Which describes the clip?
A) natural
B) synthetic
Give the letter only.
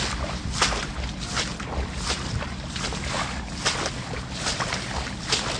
A